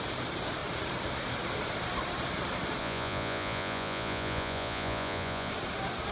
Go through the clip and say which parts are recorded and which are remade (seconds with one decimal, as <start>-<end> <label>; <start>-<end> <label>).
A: 0.0-2.8 recorded; 2.8-5.5 remade; 5.5-6.1 recorded